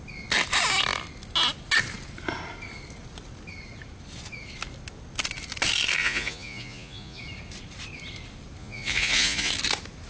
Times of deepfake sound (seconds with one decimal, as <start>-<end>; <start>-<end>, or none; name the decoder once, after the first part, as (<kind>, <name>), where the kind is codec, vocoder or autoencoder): 6.0-7.2 (vocoder, Vocos); 8.6-9.5

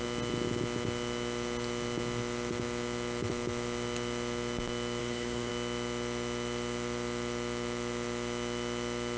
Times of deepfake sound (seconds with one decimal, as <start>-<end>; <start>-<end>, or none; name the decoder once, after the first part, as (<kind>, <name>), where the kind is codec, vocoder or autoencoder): 5.0-5.5 (codec, HILCodec)

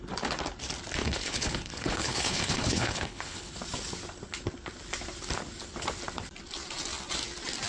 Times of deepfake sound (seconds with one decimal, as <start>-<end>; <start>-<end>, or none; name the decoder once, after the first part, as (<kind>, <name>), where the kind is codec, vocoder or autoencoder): 1.0-3.5 (codec, HILCodec)

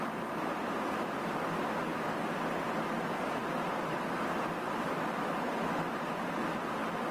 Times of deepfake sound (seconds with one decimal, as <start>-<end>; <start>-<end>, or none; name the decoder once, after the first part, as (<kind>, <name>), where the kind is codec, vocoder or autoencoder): none

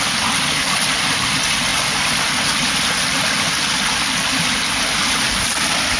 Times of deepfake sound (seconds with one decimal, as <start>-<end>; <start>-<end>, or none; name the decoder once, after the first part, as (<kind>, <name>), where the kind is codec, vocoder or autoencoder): none